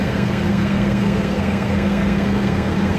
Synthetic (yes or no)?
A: yes